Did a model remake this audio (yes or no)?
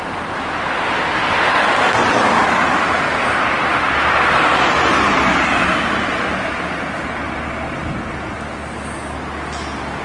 no